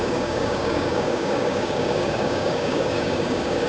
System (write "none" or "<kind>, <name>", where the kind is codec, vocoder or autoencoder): codec, DAC